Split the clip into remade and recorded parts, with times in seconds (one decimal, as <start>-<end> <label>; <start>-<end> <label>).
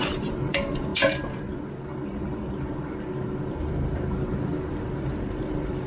0.0-0.9 remade; 0.9-1.4 recorded; 1.4-1.9 remade; 1.9-3.5 recorded; 3.5-5.9 remade